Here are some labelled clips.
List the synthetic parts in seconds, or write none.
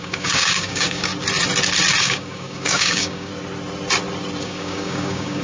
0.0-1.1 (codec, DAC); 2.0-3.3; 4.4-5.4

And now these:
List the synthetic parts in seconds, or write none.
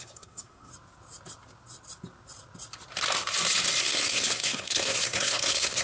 0.0-0.7 (codec, SNAC); 3.8-5.8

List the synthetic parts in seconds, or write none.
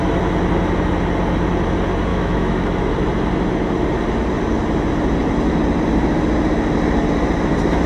2.1-2.9 (autoencoder, DAC-VAE)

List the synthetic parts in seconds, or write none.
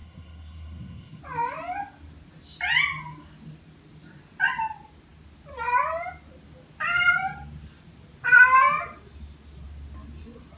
0.0-1.2 (codec, SNAC)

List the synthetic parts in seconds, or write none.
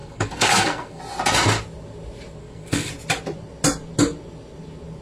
0.0-1.0 (codec, SNAC); 2.4-2.9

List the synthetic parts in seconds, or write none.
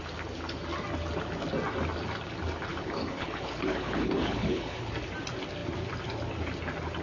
2.7-4.9 (codec, HILCodec)